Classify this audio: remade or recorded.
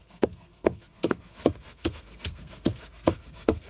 remade